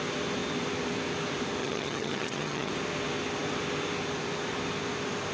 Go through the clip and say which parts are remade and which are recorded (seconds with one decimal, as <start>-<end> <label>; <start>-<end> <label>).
0.0-1.6 recorded; 1.6-2.7 remade; 2.7-5.3 recorded